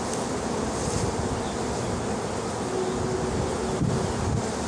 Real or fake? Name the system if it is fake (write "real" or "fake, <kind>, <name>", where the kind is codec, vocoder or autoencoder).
real